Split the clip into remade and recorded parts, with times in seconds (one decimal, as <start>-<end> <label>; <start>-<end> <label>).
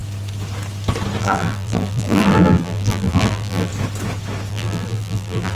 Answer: 0.0-1.2 recorded; 1.2-3.7 remade; 3.7-4.5 recorded; 4.5-5.6 remade